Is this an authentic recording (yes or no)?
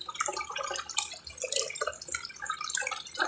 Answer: no